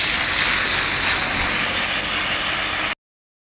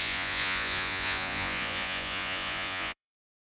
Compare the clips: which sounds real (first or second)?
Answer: first